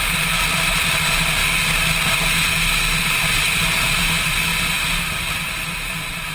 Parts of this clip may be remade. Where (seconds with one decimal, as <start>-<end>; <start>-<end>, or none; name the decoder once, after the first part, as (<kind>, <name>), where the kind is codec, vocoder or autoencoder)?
0.0-1.4 (vocoder, BigVGAN v2); 3.0-4.5; 5.0-6.3